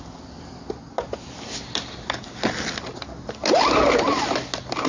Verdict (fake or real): real